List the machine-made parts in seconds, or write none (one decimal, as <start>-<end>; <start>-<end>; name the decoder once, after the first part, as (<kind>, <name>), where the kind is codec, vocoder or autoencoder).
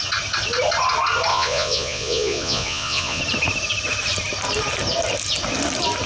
1.3-3.2 (vocoder, Vocos)